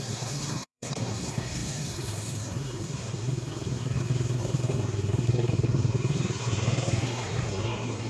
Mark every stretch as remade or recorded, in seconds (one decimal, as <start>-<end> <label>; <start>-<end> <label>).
0.0-8.1 remade